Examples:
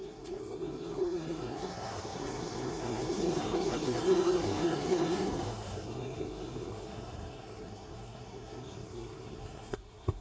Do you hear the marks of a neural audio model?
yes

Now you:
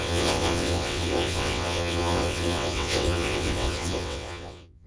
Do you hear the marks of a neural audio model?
yes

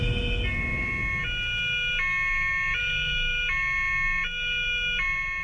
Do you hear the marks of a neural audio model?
no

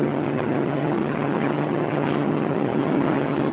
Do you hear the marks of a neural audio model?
yes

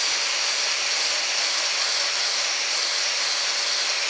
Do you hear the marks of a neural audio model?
no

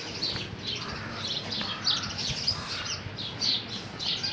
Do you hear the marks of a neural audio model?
no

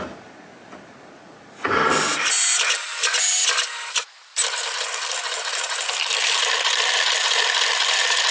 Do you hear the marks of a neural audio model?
no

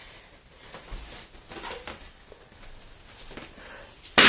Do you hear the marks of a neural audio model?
no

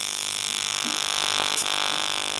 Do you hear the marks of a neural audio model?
yes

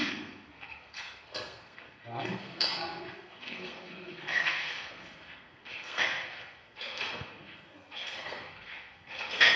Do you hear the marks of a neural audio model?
yes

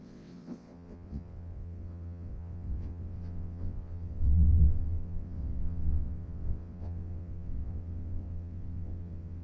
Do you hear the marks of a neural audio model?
yes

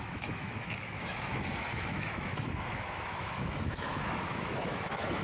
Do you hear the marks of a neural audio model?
yes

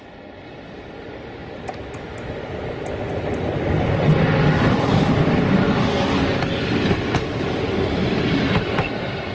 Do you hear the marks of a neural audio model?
no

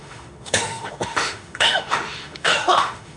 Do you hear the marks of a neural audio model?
yes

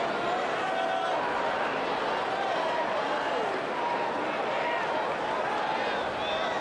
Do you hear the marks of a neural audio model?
no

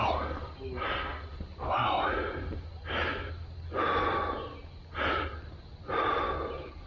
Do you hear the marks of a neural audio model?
no